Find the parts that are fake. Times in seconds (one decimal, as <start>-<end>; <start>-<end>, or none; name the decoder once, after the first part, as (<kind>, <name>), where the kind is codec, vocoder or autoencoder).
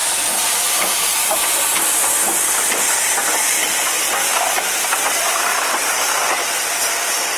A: 0.0-1.6 (vocoder, BigVGAN v2); 4.3-5.9